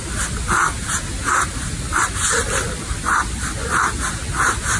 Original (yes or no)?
yes